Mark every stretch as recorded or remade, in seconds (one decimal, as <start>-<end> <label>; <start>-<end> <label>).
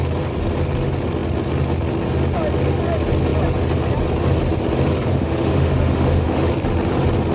0.0-5.1 recorded; 5.1-6.5 remade; 6.5-7.3 recorded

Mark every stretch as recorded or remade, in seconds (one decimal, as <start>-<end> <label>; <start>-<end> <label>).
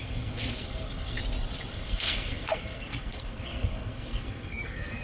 0.0-1.2 remade; 1.2-1.7 recorded; 1.7-5.0 remade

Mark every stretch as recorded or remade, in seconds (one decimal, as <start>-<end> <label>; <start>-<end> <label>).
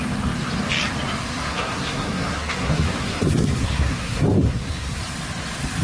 0.0-1.5 recorded; 1.5-5.0 remade; 5.0-5.8 recorded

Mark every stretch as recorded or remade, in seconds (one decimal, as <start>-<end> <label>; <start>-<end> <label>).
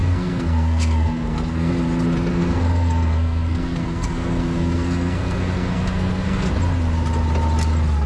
0.0-1.7 remade; 1.7-2.3 recorded; 2.3-6.5 remade; 6.5-8.1 recorded